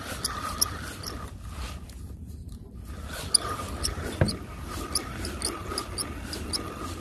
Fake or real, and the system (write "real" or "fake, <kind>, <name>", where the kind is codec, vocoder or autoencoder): real